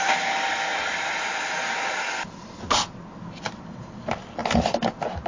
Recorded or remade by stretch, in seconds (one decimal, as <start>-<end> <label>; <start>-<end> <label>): 0.0-5.3 recorded